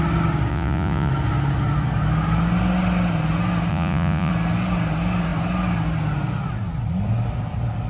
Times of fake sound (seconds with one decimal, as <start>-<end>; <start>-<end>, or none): 0.5-1.1; 3.7-4.3